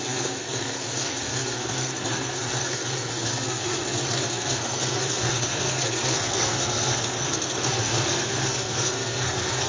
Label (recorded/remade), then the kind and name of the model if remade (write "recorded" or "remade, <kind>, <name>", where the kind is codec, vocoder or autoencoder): remade, codec, SNAC